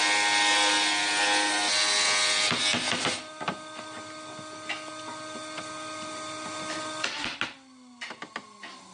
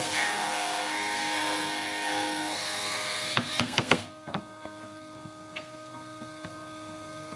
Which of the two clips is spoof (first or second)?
second